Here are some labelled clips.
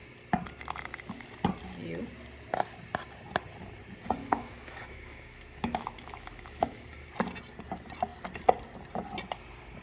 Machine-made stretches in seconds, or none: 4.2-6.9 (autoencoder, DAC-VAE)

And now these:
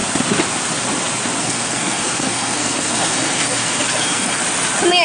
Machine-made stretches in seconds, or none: 1.4-4.4 (codec, SNAC)